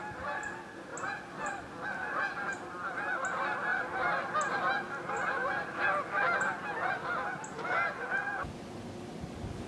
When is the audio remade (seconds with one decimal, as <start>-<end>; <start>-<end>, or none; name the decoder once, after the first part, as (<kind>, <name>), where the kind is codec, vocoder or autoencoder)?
none